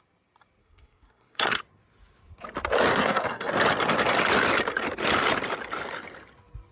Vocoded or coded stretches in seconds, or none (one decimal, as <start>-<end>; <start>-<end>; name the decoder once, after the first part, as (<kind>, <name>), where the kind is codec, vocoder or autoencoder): 0.6-1.6 (codec, SNAC); 2.9-3.5

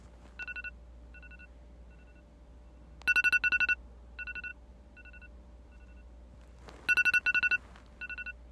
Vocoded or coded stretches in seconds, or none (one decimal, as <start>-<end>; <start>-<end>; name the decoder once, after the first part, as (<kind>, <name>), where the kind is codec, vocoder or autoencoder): none

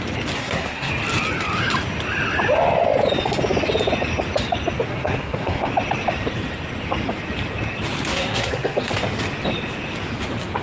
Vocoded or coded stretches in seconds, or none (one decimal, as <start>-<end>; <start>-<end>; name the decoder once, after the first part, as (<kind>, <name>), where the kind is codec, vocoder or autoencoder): 0.4-0.9 (codec, SNAC); 4.9-5.7; 8.1-8.9

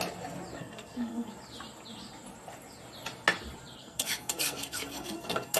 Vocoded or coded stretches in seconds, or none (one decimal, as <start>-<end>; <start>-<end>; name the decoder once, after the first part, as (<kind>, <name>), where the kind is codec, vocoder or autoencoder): 0.6-1.3 (codec, SNAC); 3.8-5.6

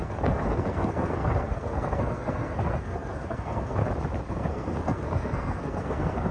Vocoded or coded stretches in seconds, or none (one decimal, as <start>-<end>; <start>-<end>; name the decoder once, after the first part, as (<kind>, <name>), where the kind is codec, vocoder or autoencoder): 0.0-3.8 (codec, SNAC); 4.3-6.3